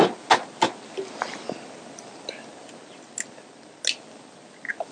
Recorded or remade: recorded